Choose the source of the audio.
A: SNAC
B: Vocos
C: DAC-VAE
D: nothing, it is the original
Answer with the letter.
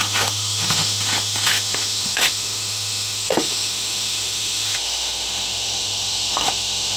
C